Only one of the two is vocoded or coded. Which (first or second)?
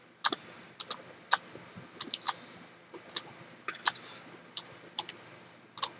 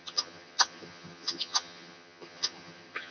second